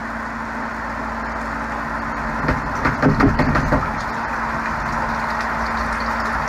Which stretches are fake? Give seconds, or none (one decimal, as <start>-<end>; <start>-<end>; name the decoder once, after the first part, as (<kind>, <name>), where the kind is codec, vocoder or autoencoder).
none